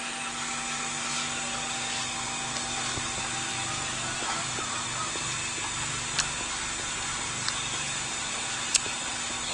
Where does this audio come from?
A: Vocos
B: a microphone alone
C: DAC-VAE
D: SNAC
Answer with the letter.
B